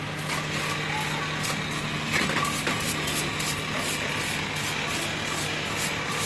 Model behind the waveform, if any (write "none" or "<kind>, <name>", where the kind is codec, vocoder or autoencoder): none